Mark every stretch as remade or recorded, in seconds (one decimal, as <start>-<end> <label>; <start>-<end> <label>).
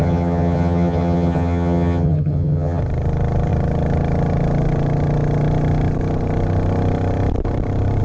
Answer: 0.0-2.8 remade; 2.8-8.0 recorded